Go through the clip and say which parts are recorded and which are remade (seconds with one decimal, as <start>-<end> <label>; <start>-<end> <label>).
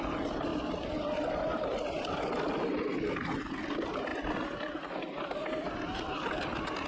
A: 0.0-6.9 recorded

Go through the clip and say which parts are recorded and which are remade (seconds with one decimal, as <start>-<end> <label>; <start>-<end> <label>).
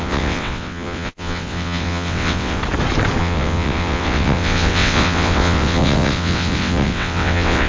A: 0.0-2.6 remade; 2.6-3.2 recorded; 3.2-7.7 remade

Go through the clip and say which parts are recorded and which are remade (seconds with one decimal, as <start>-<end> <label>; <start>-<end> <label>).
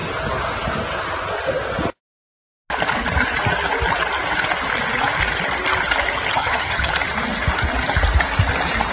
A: 0.0-6.4 recorded; 6.4-6.9 remade; 6.9-8.9 recorded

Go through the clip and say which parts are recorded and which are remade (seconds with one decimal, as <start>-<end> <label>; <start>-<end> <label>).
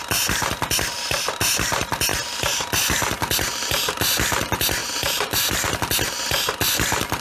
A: 0.0-4.8 recorded; 4.8-5.8 remade; 5.8-7.2 recorded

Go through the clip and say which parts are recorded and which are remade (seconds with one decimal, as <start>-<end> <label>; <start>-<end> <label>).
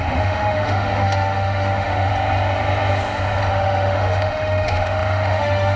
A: 0.0-2.1 remade; 2.1-3.5 recorded; 3.5-5.8 remade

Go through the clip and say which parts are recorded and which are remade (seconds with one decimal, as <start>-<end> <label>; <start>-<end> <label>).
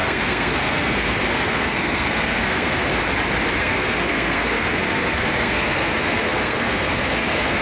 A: 0.0-2.9 remade; 2.9-3.6 recorded; 3.6-7.6 remade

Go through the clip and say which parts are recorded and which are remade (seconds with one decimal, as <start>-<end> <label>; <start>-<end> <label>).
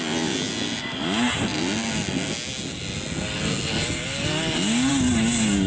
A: 0.0-5.7 recorded